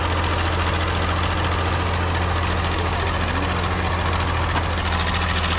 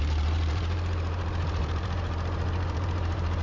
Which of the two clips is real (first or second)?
first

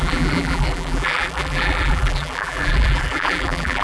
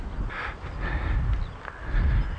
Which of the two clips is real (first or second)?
second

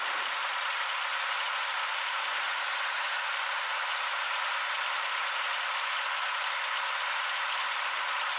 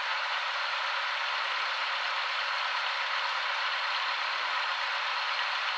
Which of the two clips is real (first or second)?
first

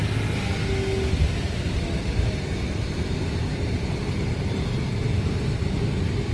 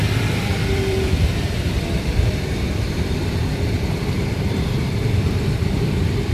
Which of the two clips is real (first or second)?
first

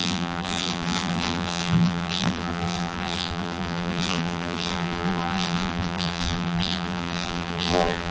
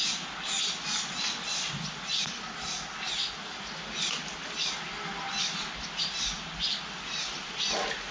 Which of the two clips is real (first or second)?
second